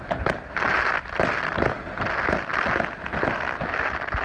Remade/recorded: recorded